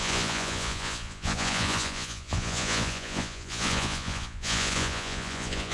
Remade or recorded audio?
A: remade